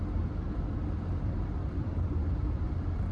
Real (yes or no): no